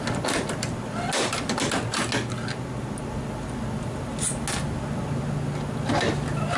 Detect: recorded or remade recorded